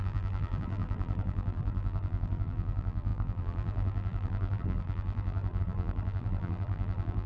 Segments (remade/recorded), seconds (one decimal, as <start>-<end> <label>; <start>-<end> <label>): 0.0-7.3 remade